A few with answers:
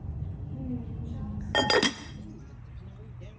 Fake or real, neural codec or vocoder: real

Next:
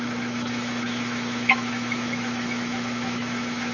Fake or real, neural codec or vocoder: fake, autoencoder, DAC-VAE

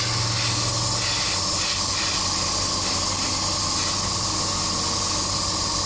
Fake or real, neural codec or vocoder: real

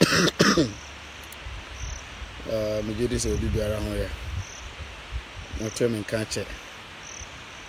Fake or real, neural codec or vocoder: real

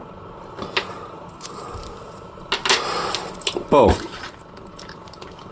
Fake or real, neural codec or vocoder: real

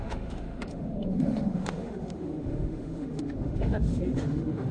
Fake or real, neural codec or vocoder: fake, autoencoder, DAC-VAE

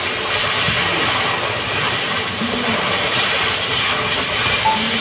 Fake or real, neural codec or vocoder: fake, vocoder, BigVGAN v2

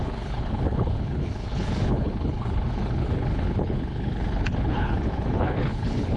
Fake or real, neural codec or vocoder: fake, codec, HILCodec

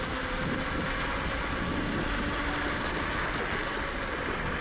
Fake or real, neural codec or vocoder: real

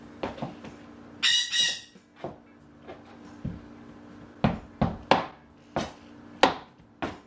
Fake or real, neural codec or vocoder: real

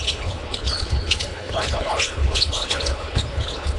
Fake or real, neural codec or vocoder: fake, codec, HILCodec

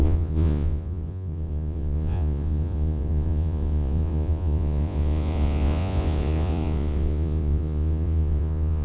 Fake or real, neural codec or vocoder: fake, vocoder, Vocos